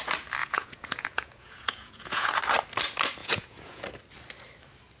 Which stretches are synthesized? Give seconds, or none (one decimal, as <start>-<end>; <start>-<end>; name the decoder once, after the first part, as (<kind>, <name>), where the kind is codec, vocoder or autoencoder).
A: 0.4-2.3 (vocoder, Vocos); 3.2-3.8